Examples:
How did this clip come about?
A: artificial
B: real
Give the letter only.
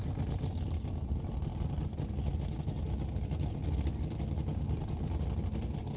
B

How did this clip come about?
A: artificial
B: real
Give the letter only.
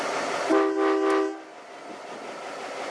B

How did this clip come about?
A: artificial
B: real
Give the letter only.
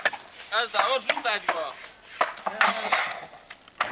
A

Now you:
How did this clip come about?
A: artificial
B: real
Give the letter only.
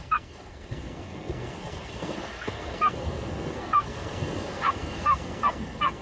A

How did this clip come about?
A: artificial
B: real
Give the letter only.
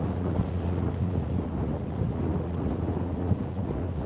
A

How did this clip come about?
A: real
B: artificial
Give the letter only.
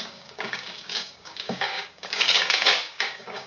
B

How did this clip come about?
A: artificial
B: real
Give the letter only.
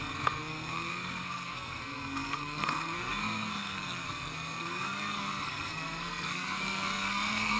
A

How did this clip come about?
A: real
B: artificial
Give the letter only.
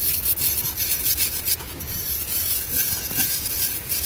B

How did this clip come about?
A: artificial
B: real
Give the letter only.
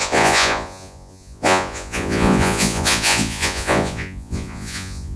A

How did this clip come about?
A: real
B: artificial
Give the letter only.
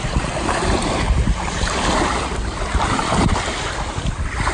A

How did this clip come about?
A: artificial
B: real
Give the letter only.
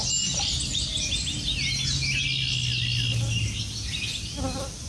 B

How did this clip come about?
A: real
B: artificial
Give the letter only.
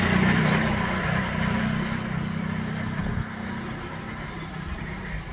B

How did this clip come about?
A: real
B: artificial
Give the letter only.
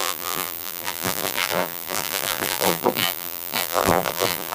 B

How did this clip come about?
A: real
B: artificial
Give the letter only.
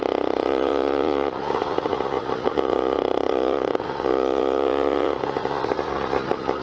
B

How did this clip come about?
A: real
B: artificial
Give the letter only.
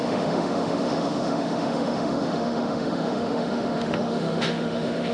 B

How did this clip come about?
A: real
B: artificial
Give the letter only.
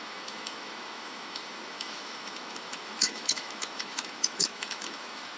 B